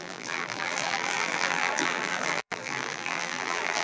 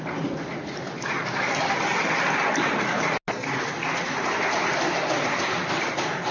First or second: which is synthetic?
first